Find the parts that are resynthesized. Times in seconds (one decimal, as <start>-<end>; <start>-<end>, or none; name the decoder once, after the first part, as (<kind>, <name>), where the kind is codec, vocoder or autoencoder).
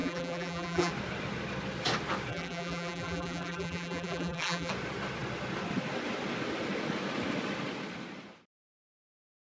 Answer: 0.0-0.9 (vocoder, BigVGAN v2); 2.3-4.7